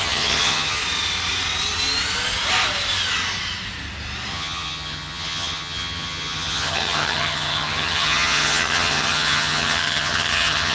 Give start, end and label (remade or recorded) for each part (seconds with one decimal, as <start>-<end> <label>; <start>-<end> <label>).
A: 0.0-0.8 remade; 0.8-4.3 recorded; 4.3-10.7 remade